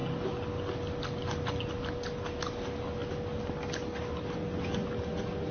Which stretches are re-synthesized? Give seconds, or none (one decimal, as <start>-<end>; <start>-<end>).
none